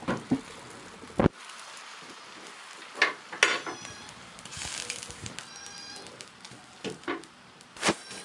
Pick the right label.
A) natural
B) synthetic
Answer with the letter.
A